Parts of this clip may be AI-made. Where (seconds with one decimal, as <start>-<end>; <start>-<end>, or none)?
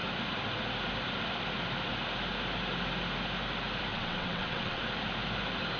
3.9-4.8